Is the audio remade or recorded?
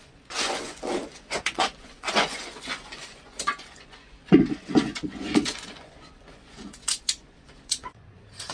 remade